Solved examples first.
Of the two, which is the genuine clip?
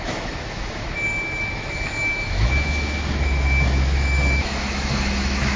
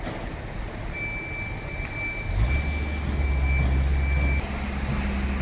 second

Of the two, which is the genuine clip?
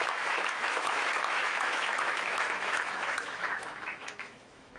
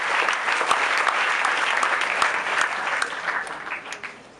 second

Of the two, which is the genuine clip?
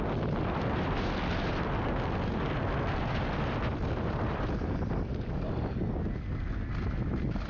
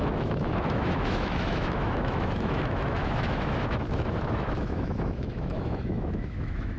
first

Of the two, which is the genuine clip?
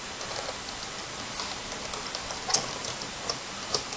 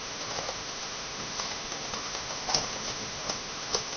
first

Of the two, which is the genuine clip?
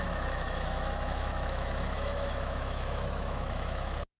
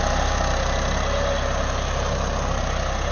second